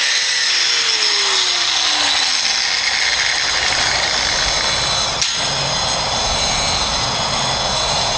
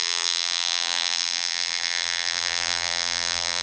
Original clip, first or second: first